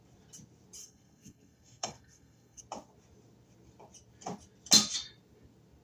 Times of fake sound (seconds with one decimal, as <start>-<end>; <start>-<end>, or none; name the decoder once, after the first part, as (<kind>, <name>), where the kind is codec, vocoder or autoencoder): 0.8-2.6 (codec, SNAC)